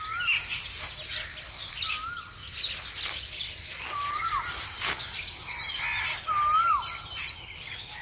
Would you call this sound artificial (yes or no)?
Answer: no